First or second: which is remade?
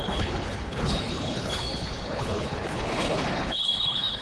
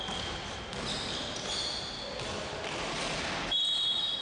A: first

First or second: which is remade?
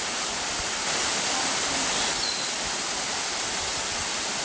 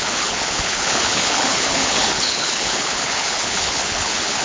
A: second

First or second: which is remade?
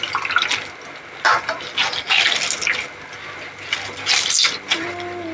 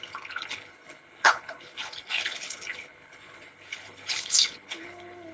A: second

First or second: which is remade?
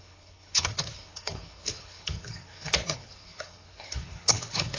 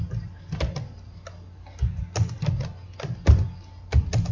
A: first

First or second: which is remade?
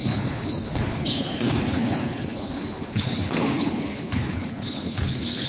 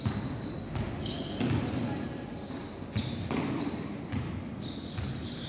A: first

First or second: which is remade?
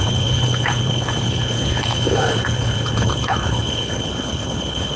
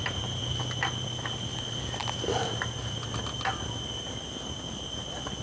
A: first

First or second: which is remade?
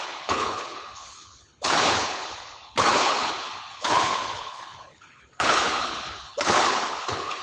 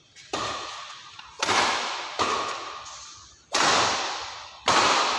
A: first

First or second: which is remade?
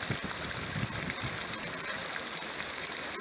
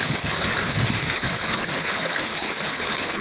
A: second